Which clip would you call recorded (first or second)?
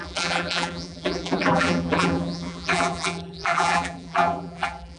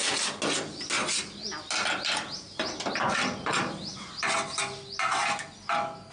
second